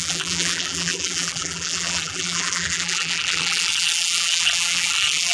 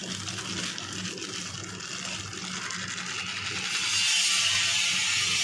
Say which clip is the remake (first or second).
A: first